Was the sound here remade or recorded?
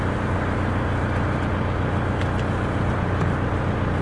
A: recorded